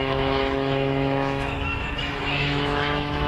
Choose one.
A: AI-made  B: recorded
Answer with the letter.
A